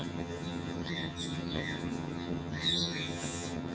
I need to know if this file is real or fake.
fake